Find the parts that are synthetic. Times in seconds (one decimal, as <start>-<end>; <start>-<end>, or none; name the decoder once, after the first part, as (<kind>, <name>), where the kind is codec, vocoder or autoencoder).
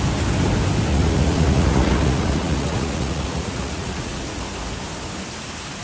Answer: 0.9-4.4 (vocoder, Vocos)